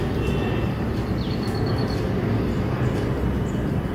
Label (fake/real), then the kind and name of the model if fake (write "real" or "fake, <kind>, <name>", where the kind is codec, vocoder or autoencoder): real